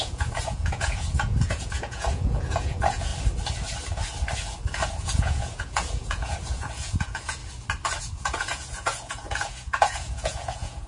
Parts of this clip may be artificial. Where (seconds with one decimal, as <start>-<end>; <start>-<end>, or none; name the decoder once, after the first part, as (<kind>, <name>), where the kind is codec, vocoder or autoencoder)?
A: 0.0-3.1 (vocoder, Vocos); 5.0-7.4; 8.0-10.9